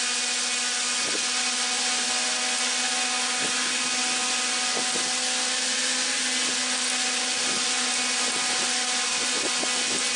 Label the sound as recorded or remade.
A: recorded